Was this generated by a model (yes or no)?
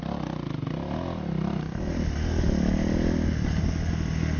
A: no